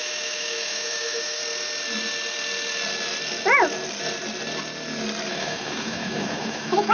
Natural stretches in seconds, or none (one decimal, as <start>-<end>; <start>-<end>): 1.4-5.3